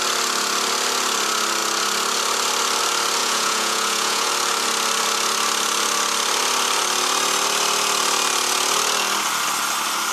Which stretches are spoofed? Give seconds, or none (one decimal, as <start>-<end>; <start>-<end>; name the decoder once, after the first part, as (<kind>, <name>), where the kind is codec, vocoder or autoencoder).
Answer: 3.2-4.3 (vocoder, Vocos)

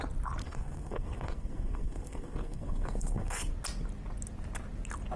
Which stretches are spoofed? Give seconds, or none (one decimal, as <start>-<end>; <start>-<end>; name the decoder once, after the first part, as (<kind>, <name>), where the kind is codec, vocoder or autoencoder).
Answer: 0.4-3.5 (codec, SNAC)

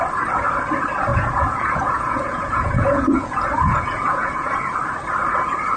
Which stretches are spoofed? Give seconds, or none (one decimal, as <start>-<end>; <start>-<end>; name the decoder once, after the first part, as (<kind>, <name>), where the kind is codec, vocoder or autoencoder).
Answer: 1.1-4.6 (vocoder, Vocos)

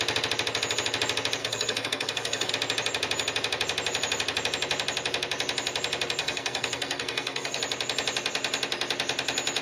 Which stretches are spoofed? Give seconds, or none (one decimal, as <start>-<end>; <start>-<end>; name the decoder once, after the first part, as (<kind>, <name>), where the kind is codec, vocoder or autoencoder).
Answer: 1.4-2.5 (codec, SNAC); 6.2-7.6

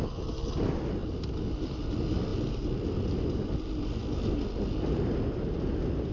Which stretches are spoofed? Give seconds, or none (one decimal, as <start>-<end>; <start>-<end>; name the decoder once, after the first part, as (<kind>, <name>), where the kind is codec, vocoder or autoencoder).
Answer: none